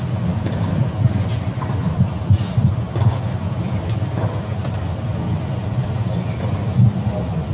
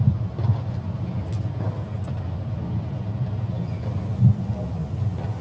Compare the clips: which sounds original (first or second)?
second